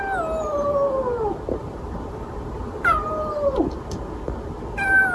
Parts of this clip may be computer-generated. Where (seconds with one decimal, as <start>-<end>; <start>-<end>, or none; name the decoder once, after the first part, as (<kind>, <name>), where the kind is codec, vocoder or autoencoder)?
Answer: 1.6-3.6 (vocoder, BigVGAN v2)